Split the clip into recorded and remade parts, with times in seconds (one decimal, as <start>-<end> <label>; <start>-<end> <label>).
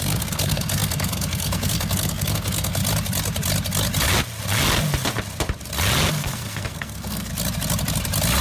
0.0-2.8 remade; 2.8-6.1 recorded; 6.1-7.3 remade; 7.3-8.4 recorded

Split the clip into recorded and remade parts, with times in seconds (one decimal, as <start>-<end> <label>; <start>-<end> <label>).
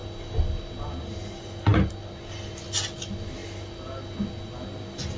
0.0-5.2 recorded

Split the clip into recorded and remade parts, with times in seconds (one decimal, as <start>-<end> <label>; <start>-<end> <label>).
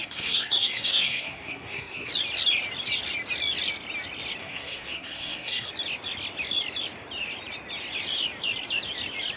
0.0-2.1 remade; 2.1-4.4 recorded; 4.4-5.7 remade; 5.7-9.4 recorded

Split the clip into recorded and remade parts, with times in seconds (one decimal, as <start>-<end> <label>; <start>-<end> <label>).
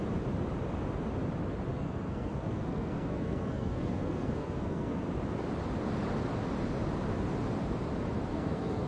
0.0-1.7 recorded; 1.7-5.0 remade; 5.0-8.3 recorded; 8.3-8.9 remade